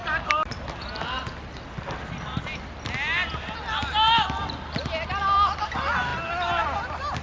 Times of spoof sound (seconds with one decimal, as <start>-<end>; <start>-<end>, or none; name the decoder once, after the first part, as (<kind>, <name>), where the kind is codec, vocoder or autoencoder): none